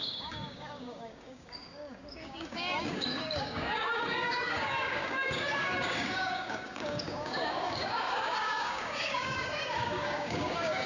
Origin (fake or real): fake